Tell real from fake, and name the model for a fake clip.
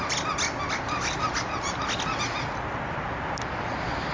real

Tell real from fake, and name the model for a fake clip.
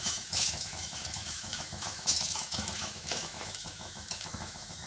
fake, autoencoder, DAC-VAE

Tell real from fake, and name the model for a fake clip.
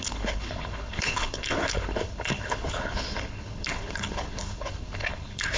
fake, codec, HILCodec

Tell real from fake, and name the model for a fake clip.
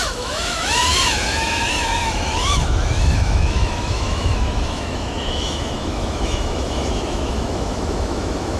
fake, autoencoder, DAC-VAE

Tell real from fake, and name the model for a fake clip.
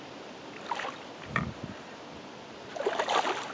real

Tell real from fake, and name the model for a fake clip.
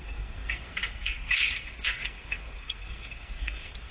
fake, codec, SNAC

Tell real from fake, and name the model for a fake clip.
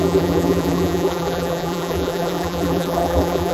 fake, vocoder, BigVGAN v2